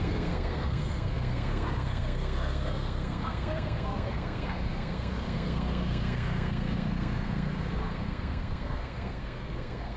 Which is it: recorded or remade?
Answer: remade